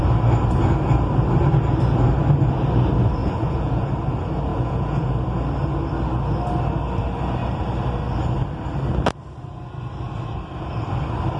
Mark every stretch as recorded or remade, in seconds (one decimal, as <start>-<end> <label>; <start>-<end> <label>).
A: 0.0-3.2 recorded; 3.2-3.9 remade; 3.9-4.5 recorded; 4.5-5.1 remade; 5.1-11.4 recorded